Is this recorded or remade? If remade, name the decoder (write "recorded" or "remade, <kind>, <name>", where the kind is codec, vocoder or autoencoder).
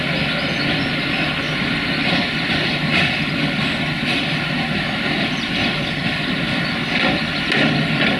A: recorded